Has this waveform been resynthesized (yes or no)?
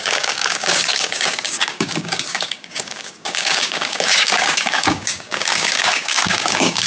yes